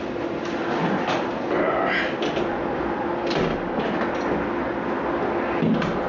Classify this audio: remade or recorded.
recorded